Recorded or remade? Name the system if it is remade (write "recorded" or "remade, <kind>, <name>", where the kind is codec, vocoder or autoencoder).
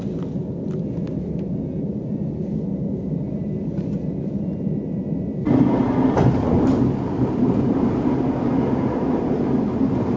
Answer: recorded